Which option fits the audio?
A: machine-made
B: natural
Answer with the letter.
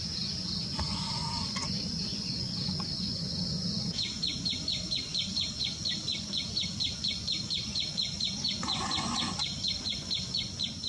A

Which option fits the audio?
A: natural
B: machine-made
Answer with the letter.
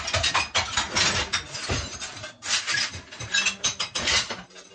A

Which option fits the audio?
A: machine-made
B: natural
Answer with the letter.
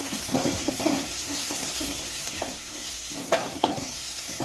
A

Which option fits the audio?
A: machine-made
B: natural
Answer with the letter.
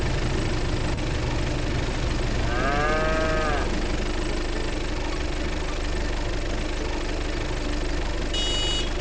B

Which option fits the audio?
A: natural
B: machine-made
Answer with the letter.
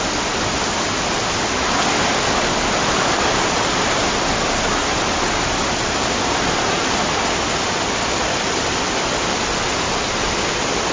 B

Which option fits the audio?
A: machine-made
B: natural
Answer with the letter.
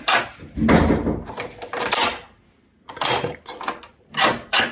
B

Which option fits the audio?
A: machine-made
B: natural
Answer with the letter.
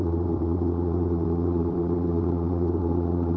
A